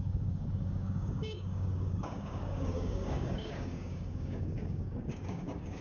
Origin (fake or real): fake